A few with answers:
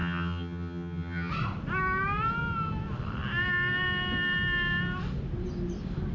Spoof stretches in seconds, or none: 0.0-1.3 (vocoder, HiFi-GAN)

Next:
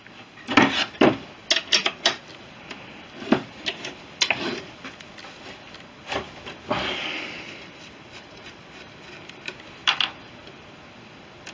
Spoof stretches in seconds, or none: none

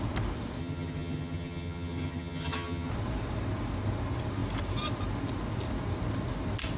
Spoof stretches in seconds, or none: 0.6-2.9 (vocoder, HiFi-GAN)

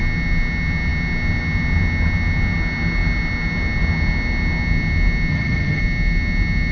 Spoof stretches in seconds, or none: 5.3-5.8 (vocoder, HiFi-GAN)

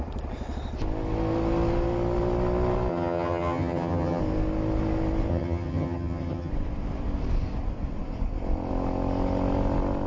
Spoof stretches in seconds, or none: 2.9-4.2 (vocoder, HiFi-GAN); 5.3-6.5